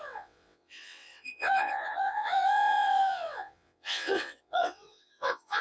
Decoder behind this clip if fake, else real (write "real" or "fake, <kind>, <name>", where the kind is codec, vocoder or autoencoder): fake, vocoder, WaveNeXt